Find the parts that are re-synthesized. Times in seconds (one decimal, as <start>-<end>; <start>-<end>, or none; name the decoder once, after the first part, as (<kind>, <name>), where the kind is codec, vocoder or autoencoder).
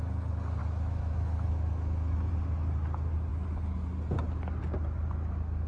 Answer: 0.6-2.3 (autoencoder, DAC-VAE)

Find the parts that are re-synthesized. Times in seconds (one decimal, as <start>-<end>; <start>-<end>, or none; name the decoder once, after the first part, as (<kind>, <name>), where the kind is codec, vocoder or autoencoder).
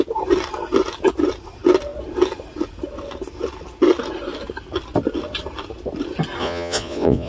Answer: 6.4-7.3 (vocoder, Vocos)